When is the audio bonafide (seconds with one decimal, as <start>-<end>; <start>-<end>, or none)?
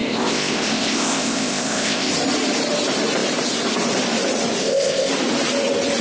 2.1-4.6; 5.1-6.0